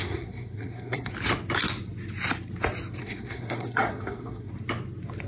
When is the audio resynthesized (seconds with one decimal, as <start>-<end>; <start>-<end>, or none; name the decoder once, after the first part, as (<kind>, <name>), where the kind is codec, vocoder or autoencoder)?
0.0-1.1 (codec, SNAC); 3.0-4.5